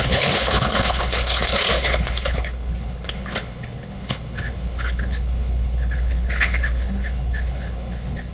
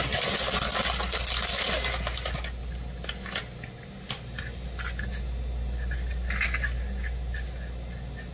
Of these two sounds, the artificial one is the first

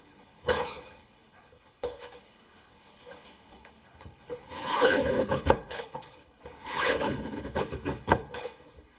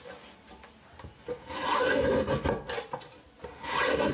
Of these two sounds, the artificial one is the first